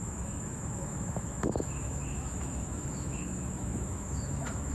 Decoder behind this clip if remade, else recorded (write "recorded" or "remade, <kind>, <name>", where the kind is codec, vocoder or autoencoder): remade, autoencoder, DAC-VAE